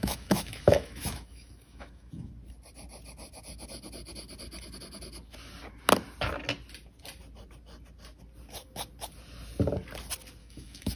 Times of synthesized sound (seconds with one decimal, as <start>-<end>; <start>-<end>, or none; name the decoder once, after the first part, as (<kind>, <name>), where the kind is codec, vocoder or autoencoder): 0.0-2.3 (autoencoder, DAC-VAE); 10.4-11.0